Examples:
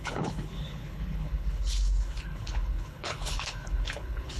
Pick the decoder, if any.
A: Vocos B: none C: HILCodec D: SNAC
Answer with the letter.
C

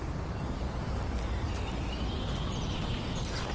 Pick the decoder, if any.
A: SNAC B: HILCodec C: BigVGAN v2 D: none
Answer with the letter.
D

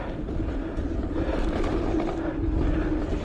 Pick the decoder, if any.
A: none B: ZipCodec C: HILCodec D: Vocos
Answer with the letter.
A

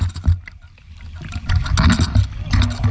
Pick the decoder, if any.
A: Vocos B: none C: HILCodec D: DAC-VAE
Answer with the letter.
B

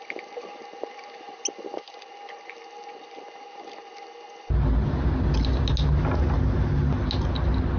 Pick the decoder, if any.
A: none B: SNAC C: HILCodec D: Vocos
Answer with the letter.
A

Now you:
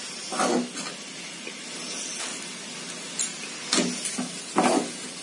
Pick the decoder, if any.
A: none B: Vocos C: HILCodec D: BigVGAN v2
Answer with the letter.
A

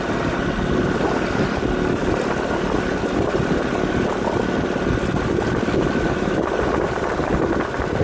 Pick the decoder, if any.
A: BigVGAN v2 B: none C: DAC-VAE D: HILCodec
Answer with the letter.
B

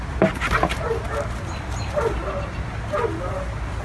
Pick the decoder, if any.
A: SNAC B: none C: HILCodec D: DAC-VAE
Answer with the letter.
B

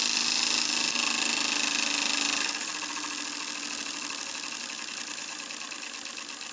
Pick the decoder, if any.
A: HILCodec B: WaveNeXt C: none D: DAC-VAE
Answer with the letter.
C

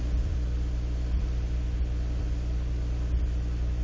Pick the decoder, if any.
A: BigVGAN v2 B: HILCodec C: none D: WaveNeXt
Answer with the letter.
C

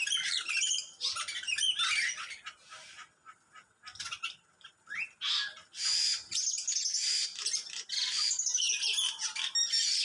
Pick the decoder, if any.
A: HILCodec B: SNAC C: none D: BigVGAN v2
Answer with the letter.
C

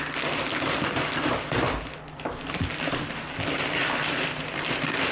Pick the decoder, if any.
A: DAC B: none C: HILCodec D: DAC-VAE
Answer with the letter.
B